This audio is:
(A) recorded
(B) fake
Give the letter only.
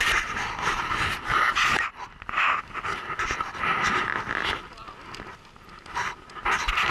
A